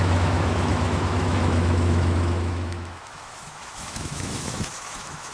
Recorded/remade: remade